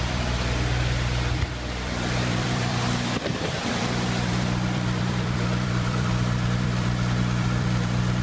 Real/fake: fake